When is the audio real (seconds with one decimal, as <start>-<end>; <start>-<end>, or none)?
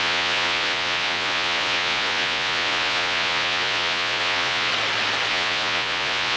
4.7-5.3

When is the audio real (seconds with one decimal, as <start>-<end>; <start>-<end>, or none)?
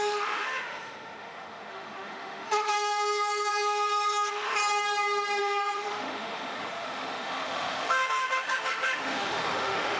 4.6-5.4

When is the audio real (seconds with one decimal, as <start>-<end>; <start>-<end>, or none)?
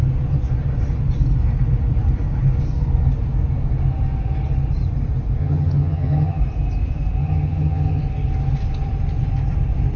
0.0-5.4; 6.4-7.2; 8.0-10.0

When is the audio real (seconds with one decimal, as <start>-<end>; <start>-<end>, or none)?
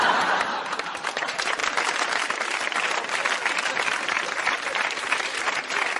1.6-3.9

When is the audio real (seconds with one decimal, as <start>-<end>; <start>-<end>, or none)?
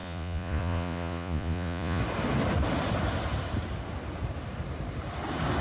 2.0-5.6